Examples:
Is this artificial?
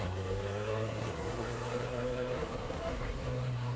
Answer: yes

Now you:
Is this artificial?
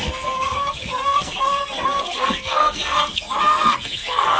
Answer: yes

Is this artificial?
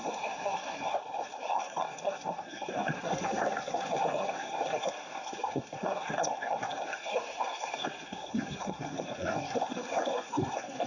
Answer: yes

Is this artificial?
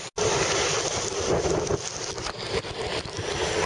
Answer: no